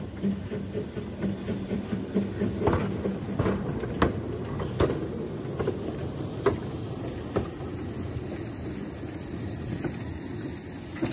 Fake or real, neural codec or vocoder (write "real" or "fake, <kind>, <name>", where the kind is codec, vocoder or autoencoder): real